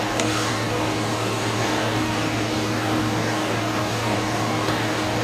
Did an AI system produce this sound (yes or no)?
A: yes